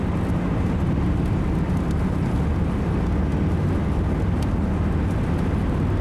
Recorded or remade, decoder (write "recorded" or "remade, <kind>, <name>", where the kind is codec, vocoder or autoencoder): recorded